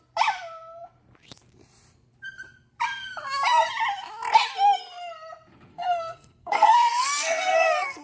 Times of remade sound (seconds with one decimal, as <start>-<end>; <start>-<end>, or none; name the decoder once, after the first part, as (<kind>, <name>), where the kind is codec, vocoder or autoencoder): 5.7-8.0 (codec, SNAC)